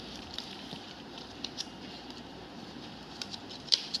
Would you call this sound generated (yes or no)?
yes